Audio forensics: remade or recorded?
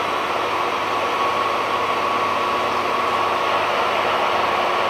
recorded